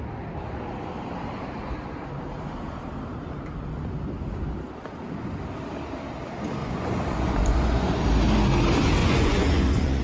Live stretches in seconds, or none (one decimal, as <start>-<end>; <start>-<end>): 0.0-6.6; 8.0-9.0